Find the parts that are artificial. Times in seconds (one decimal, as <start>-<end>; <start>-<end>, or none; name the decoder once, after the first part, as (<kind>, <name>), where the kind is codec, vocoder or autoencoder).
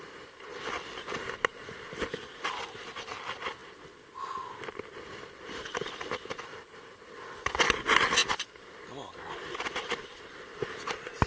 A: none